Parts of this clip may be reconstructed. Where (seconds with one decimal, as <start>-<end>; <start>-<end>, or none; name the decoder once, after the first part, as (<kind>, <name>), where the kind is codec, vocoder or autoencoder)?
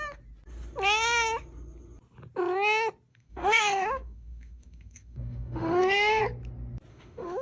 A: 3.1-6.2 (autoencoder, DAC-VAE); 6.9-7.4